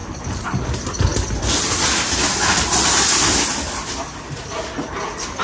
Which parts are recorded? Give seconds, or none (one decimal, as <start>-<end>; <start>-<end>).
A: 0.0-5.4